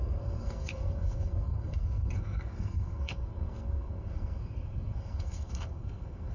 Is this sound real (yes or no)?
no